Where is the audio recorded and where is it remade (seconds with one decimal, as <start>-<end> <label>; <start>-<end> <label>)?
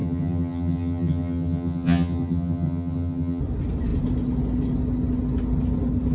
0.0-3.4 remade; 3.4-6.1 recorded